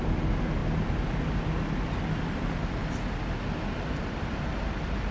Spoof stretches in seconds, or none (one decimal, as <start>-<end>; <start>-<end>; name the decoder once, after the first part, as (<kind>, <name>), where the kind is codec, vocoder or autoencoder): none